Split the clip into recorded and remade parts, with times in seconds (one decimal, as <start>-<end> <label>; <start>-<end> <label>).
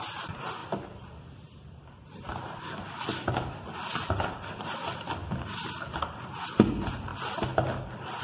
0.0-8.2 recorded